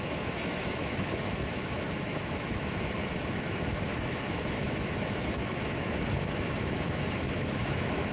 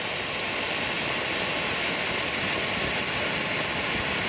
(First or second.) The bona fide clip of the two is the second